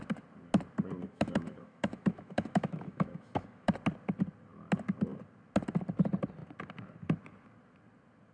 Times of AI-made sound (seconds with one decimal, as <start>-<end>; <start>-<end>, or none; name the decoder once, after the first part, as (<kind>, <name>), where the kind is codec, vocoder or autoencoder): 1.0-3.7 (autoencoder, DAC-VAE)